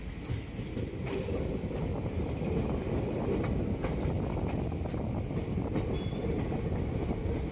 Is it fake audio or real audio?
real